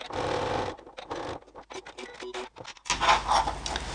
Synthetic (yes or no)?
no